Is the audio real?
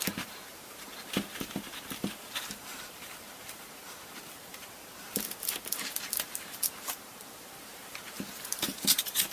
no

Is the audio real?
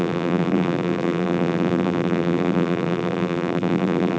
no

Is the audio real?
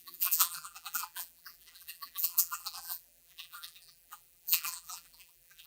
no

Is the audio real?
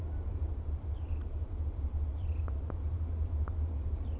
no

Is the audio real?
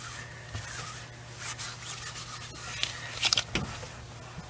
yes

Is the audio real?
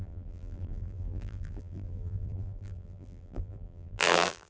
no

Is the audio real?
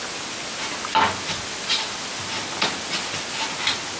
yes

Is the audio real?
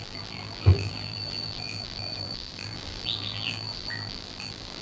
no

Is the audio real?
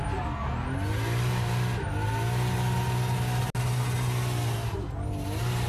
yes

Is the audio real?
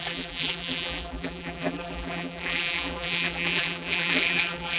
no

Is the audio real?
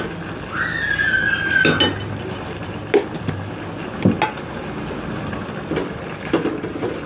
yes